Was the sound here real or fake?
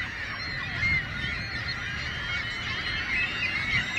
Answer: real